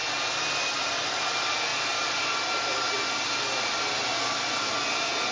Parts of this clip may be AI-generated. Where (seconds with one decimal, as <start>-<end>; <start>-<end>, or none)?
none